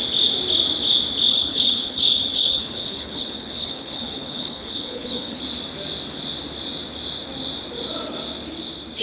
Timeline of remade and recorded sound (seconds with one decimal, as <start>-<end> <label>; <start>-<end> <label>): 0.0-1.3 recorded; 1.3-5.4 remade; 5.4-9.0 recorded